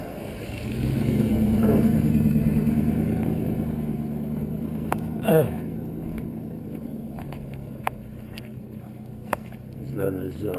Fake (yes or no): yes